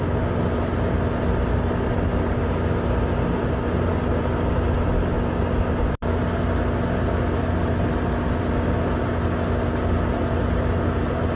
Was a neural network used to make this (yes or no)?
no